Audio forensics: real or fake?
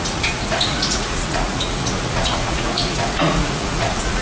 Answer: fake